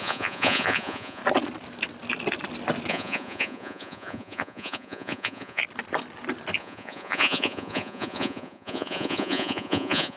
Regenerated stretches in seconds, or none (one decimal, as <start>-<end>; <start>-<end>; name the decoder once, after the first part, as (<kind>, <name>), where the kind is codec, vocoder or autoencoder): 0.0-1.2 (vocoder, Vocos); 2.9-5.6; 6.6-10.2